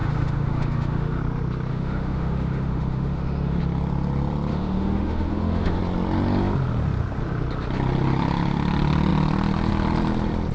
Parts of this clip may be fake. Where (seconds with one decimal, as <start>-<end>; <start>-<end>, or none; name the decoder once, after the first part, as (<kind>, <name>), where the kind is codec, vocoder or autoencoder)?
0.0-1.2 (autoencoder, DAC-VAE); 1.7-3.6; 4.5-5.8